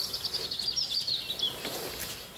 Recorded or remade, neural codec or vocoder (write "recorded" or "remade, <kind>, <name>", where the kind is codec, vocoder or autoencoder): recorded